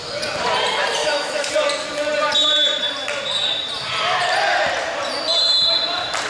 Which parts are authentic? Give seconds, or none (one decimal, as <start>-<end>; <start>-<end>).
0.0-1.0; 1.5-6.3